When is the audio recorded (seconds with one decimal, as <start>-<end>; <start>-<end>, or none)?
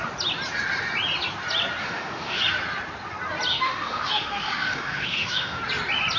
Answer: 0.0-1.8; 2.4-3.5; 5.6-6.2